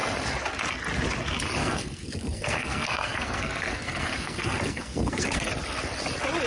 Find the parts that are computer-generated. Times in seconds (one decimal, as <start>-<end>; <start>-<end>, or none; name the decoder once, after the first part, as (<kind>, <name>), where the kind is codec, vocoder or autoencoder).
1.6-5.5 (codec, SNAC)